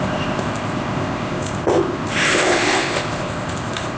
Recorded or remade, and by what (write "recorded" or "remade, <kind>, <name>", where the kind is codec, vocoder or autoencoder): remade, codec, ZipCodec